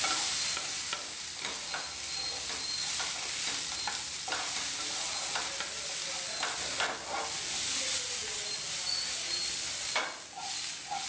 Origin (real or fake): real